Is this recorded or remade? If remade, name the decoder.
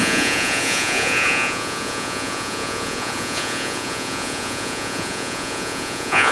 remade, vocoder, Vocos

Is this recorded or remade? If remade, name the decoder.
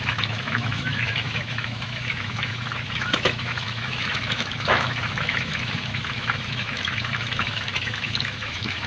remade, autoencoder, DAC-VAE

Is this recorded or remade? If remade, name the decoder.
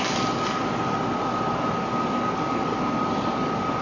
recorded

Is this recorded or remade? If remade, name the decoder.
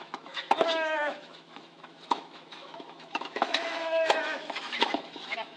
remade, autoencoder, DAC-VAE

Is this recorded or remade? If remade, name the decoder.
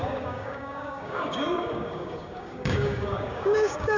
remade, codec, DAC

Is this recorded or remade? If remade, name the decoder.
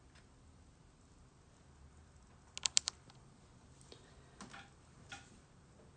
recorded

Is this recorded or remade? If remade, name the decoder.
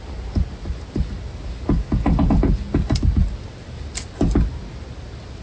recorded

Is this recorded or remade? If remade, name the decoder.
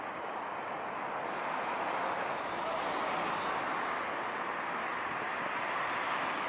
recorded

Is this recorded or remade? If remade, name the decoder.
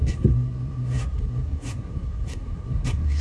remade, codec, SNAC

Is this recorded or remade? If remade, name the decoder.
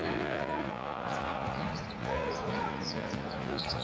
remade, vocoder, Vocos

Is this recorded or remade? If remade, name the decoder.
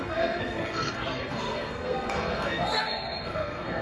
remade, codec, SNAC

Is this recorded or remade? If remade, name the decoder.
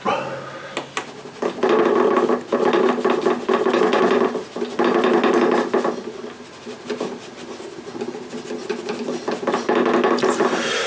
recorded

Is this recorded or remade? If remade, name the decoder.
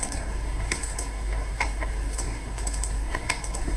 remade, codec, SNAC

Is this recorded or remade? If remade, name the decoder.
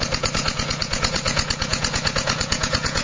remade, vocoder, Vocos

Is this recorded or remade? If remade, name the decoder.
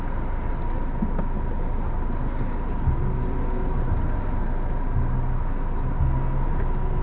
recorded